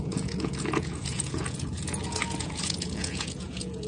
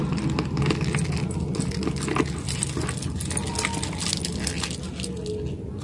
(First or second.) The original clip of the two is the second